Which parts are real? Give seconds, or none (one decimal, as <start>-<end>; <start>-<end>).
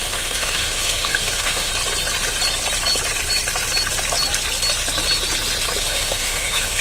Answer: 1.7-5.8